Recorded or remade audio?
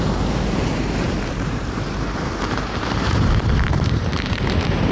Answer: remade